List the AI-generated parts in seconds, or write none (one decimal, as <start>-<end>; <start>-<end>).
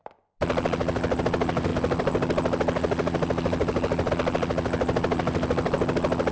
0.0-1.2; 1.7-4.1